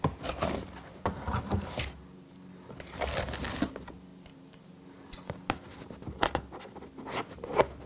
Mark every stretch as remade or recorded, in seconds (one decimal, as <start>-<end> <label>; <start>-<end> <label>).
0.0-7.9 recorded